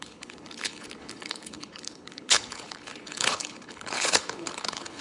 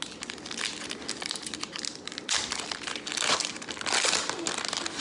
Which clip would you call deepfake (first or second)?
first